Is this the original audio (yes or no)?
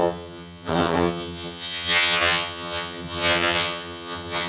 no